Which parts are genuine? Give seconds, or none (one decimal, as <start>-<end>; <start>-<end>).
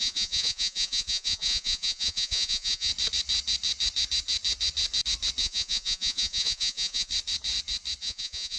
2.9-5.4; 7.1-8.0